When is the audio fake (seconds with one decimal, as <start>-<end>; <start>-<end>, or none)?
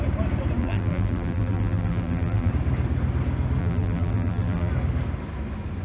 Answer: 0.6-2.5; 3.6-4.7